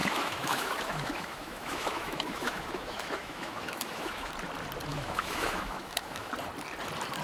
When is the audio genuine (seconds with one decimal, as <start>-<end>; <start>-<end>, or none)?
4.3-4.9; 6.3-7.2